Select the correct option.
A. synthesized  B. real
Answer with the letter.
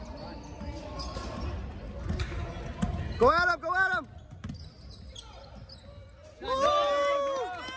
B